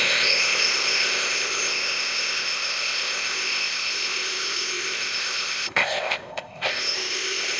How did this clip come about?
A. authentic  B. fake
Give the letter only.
B